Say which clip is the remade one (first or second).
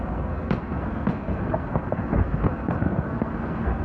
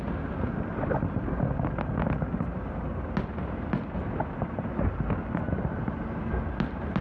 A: first